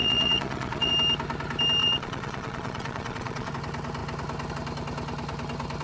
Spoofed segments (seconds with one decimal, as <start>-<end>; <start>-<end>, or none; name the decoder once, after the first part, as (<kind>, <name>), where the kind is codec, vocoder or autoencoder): 0.0-0.9 (vocoder, Vocos); 1.8-3.5